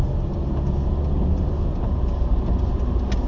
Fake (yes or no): no